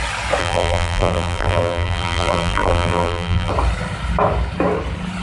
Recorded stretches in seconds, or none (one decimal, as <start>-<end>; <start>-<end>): 0.0-0.4; 3.5-5.2